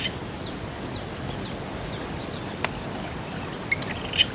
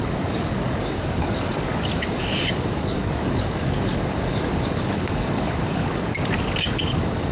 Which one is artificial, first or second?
second